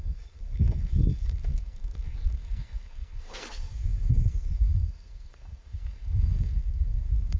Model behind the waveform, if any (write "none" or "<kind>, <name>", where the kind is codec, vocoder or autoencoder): codec, SNAC